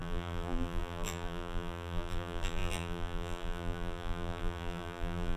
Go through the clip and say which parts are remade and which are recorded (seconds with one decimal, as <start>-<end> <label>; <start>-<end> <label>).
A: 0.0-5.4 remade